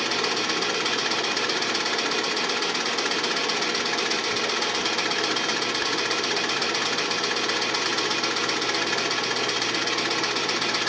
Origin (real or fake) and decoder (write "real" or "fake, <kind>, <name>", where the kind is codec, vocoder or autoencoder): real